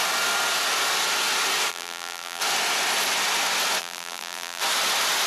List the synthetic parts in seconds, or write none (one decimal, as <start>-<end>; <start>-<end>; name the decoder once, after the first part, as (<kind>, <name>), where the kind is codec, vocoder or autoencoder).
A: 1.7-2.4 (vocoder, BigVGAN v2); 3.8-4.6